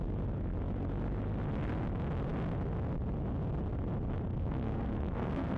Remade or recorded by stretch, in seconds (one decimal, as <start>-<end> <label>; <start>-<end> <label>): 0.0-4.3 recorded; 4.3-5.6 remade